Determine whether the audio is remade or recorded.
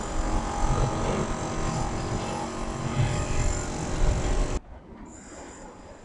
recorded